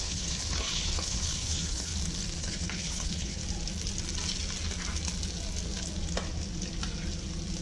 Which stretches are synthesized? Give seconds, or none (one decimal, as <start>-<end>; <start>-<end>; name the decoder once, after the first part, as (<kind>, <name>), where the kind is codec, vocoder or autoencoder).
0.0-1.9 (codec, HILCodec); 2.4-3.4